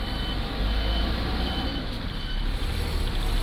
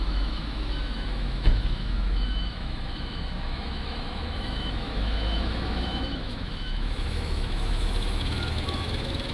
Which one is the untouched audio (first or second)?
first